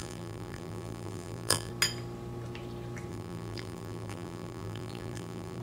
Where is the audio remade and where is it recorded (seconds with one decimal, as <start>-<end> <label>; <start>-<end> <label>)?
0.0-1.7 remade; 1.7-3.1 recorded; 3.1-5.6 remade